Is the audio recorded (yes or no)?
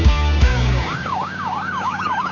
no